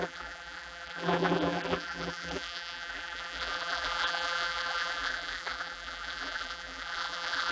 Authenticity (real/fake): fake